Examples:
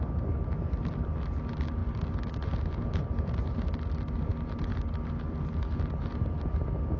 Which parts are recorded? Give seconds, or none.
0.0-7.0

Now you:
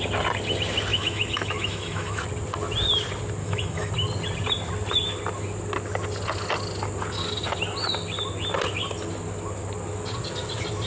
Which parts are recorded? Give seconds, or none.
0.0-0.9; 2.2-3.4; 3.9-10.9